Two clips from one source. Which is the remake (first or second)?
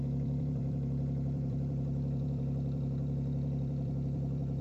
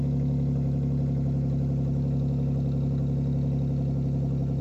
first